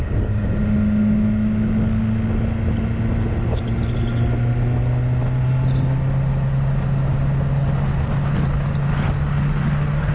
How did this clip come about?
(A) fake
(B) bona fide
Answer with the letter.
B